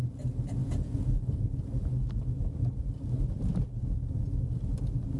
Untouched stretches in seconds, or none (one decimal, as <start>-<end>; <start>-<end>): 0.0-0.6; 1.7-5.2